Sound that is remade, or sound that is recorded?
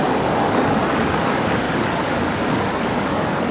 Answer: remade